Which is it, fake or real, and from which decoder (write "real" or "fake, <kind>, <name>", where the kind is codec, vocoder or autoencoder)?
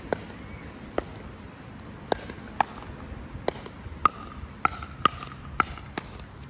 real